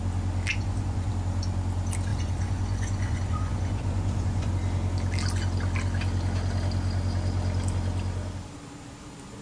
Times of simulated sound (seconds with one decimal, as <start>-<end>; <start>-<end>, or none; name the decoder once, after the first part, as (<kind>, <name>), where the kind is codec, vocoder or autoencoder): 0.5-1.1 (vocoder, Vocos); 2.1-4.5